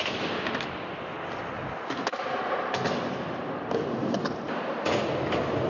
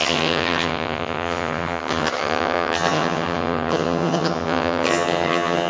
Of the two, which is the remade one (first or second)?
second